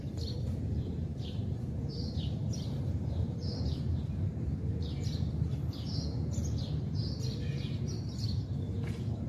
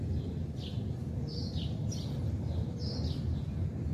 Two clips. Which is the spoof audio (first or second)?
first